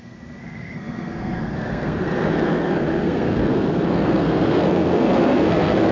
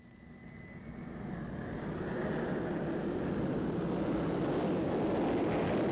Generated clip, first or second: first